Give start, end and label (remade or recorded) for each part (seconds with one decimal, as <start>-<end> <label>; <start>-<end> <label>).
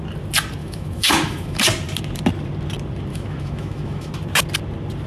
0.0-0.6 recorded; 0.6-1.6 remade; 1.6-3.1 recorded; 3.1-4.1 remade; 4.1-5.1 recorded